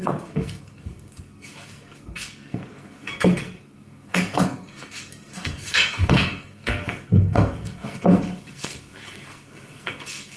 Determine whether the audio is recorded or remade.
remade